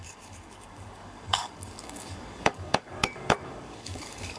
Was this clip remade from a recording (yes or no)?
yes